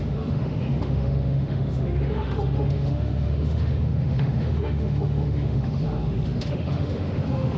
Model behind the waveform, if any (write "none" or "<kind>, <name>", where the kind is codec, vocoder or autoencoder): autoencoder, DAC-VAE